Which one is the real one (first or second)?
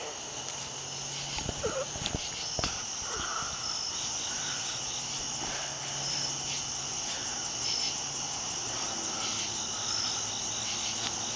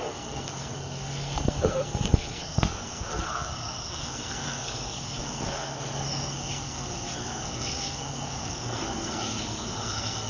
first